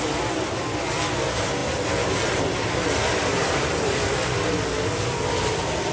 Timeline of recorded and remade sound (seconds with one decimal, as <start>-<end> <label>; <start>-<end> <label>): 0.0-5.9 recorded